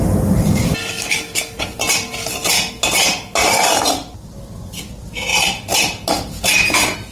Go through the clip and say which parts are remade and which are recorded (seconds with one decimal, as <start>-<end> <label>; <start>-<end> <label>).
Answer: 0.0-0.8 recorded; 0.8-1.6 remade; 1.6-7.1 recorded

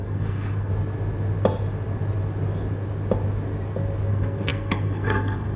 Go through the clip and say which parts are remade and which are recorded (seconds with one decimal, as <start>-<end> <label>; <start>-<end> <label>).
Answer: 0.0-0.7 remade; 0.7-4.1 recorded; 4.1-5.6 remade

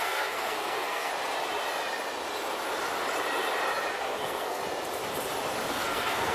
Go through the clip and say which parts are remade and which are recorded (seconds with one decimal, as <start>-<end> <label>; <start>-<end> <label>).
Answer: 0.0-1.1 remade; 1.1-3.9 recorded; 3.9-4.6 remade; 4.6-5.7 recorded; 5.7-6.3 remade

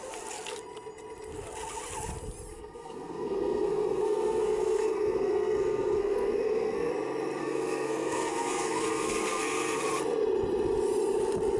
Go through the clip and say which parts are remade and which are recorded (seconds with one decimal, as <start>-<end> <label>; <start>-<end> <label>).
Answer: 0.0-2.5 recorded; 2.5-6.9 remade; 6.9-7.4 recorded; 7.4-9.8 remade; 9.8-11.6 recorded

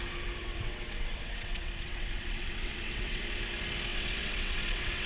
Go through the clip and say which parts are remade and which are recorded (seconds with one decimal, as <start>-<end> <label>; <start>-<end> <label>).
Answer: 0.0-0.4 recorded; 0.4-3.2 remade; 3.2-3.9 recorded; 3.9-5.1 remade

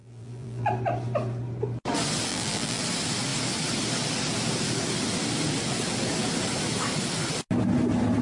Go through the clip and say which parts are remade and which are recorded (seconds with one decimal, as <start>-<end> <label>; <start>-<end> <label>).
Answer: 0.0-0.7 remade; 0.7-2.3 recorded; 2.3-2.8 remade; 2.8-8.2 recorded

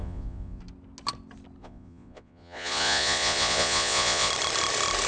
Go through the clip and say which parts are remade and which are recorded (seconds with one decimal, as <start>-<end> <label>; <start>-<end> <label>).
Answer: 0.0-0.6 remade; 0.6-1.6 recorded; 1.6-4.3 remade; 4.3-5.1 recorded

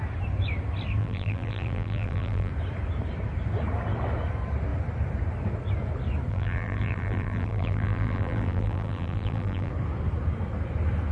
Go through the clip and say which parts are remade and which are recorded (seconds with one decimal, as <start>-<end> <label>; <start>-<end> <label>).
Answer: 0.0-1.0 recorded; 1.0-2.5 remade; 2.5-6.3 recorded; 6.3-9.7 remade; 9.7-11.1 recorded